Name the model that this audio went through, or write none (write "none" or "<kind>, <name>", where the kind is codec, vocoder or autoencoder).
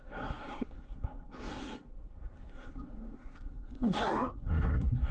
codec, SNAC